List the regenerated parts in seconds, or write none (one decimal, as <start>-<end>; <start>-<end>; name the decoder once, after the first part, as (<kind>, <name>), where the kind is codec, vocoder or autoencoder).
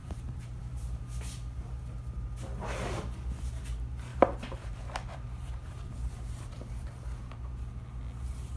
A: 0.0-1.0 (vocoder, BigVGAN v2); 4.1-7.6